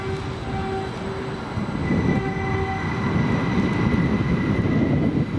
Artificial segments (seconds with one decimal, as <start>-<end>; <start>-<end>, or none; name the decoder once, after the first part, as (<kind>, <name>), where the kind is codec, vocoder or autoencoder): none